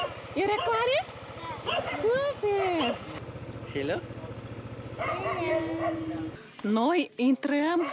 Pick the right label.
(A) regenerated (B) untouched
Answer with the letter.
B